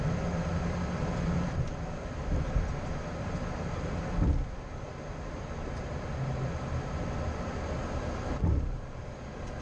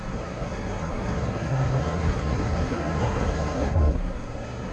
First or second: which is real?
first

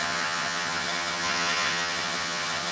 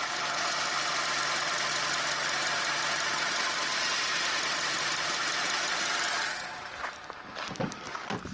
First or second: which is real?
second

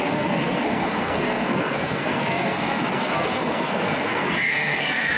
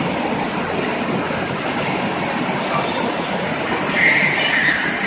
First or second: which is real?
second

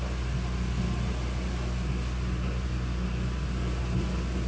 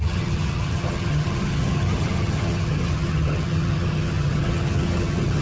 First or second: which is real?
first